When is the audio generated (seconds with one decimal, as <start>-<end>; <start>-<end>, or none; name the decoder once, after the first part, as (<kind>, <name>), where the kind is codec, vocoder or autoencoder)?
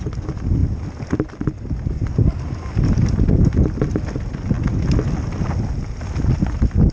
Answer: none